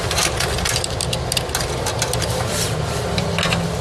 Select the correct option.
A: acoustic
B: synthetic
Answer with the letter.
A